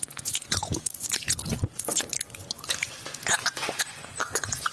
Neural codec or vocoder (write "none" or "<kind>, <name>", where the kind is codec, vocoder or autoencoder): vocoder, Vocos